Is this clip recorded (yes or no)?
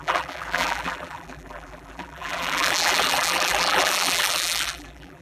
no